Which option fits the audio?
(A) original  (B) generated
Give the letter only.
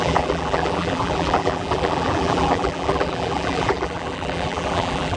B